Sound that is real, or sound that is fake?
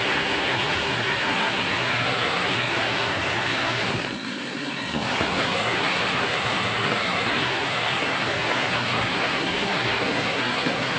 fake